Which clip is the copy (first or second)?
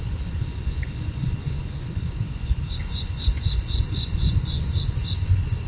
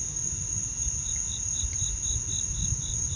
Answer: first